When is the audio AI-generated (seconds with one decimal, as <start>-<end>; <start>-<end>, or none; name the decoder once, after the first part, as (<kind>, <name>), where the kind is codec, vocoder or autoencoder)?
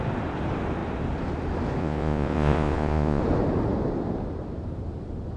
1.8-3.2 (vocoder, Vocos)